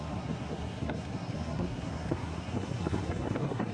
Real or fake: fake